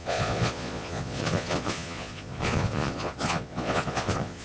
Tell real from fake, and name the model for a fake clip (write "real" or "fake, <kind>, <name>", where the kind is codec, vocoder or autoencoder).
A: fake, vocoder, Vocos